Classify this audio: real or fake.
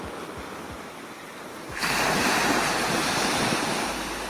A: real